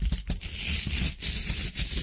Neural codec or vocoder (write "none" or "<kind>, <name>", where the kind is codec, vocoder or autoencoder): none